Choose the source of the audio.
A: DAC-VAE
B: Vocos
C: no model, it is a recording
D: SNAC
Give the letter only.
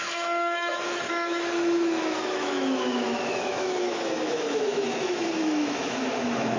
A